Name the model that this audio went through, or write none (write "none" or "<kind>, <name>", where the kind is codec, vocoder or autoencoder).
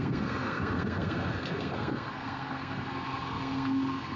codec, SNAC